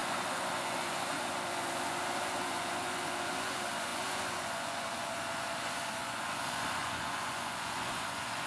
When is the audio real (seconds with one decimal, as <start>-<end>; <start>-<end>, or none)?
none